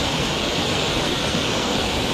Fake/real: fake